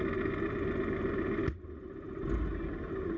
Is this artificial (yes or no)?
no